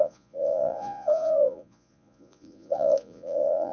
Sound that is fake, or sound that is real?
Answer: fake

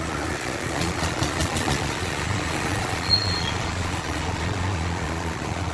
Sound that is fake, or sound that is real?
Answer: fake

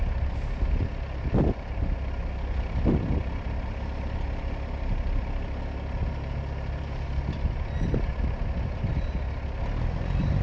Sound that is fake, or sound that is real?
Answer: real